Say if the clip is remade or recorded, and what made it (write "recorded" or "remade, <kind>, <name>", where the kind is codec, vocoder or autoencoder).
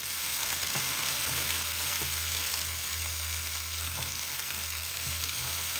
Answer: remade, codec, SNAC